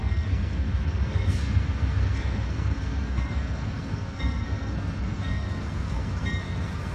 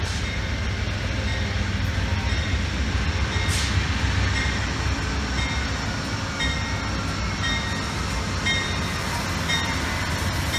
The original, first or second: second